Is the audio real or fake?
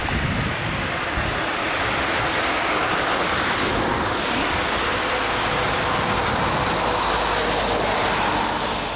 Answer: real